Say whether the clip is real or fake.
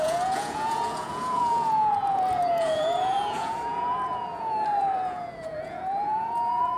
fake